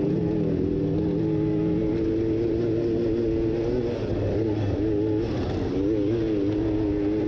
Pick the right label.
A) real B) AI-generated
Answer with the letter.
A